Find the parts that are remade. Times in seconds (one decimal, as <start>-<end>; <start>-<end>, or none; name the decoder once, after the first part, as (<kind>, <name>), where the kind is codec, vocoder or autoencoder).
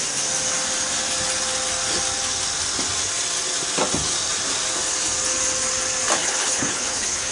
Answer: 6.2-7.3 (codec, HILCodec)